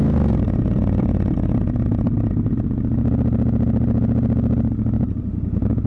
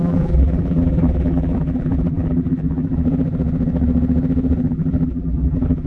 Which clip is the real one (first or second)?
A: first